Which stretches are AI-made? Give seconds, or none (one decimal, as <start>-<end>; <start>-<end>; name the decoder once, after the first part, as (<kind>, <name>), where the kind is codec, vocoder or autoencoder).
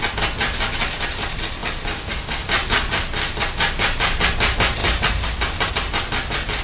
4.8-5.7 (vocoder, BigVGAN v2)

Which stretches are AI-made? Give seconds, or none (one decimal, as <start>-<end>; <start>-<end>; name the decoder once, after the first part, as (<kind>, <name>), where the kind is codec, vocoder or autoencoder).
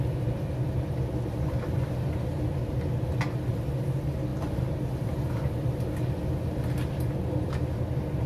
none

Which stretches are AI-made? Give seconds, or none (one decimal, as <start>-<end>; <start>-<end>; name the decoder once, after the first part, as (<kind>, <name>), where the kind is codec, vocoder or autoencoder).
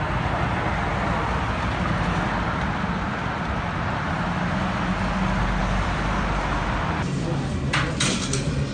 0.9-4.4 (vocoder, BigVGAN v2); 5.6-6.2